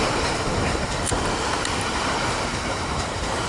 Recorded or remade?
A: remade